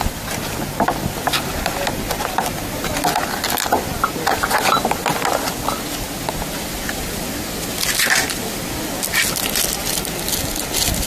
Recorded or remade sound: recorded